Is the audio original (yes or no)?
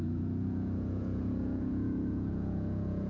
no